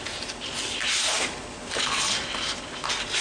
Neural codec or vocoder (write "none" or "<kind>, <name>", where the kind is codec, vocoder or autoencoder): none